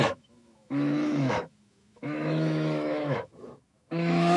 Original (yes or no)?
no